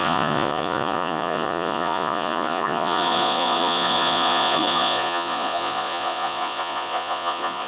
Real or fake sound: fake